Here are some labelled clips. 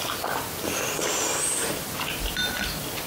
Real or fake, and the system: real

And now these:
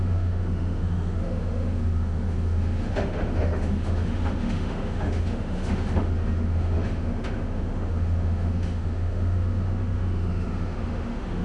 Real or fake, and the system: fake, autoencoder, DAC-VAE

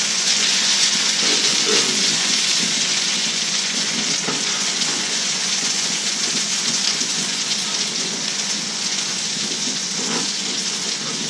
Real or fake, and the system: fake, vocoder, Vocos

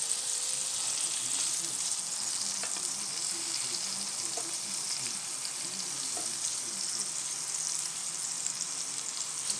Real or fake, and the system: real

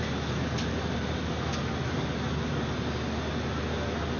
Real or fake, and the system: real